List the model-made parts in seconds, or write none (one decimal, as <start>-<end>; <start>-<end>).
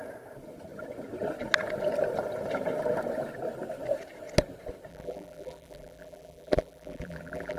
4.9-7.6